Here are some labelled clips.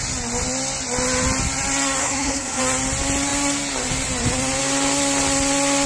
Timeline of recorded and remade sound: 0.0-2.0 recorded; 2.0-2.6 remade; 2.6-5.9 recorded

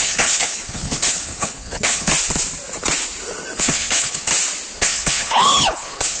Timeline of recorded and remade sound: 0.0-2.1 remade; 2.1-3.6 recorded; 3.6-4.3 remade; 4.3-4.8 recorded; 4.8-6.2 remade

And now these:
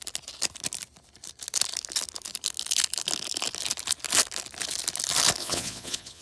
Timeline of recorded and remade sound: 0.0-5.4 recorded; 5.4-6.2 remade

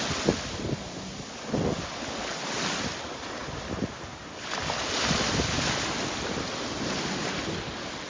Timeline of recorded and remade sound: 0.0-8.1 recorded